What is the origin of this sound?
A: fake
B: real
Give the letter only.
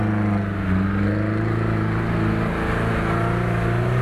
B